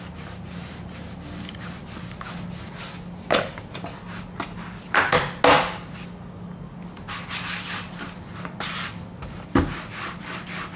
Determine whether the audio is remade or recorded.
recorded